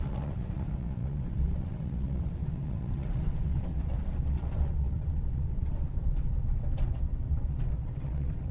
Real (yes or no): no